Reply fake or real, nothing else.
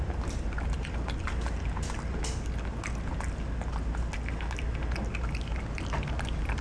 real